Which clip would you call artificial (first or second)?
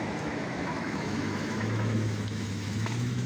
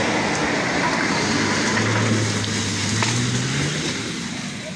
first